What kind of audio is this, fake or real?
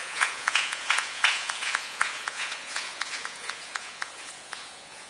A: fake